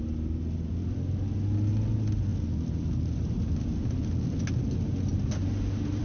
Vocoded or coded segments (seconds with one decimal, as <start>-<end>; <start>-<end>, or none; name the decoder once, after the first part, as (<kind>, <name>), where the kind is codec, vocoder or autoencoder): 5.1-6.0 (vocoder, BigVGAN v2)